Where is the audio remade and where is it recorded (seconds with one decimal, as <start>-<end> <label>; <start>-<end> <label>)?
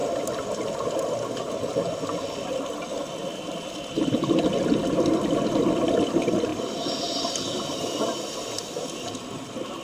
0.0-9.8 recorded